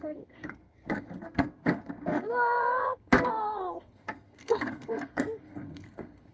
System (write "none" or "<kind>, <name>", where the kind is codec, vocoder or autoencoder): codec, SNAC